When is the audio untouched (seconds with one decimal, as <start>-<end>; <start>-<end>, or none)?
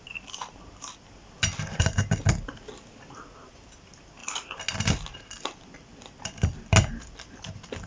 0.0-7.9